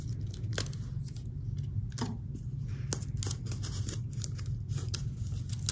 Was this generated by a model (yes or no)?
no